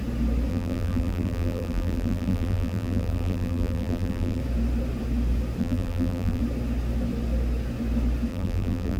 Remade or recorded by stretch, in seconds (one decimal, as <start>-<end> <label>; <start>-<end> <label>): 0.0-0.5 recorded; 0.5-4.4 remade; 4.4-5.6 recorded; 5.6-6.4 remade; 6.4-8.3 recorded; 8.3-9.0 remade